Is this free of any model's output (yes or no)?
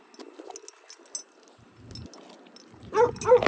yes